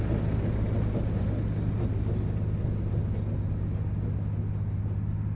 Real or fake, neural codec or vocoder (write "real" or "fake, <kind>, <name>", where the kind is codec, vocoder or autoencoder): real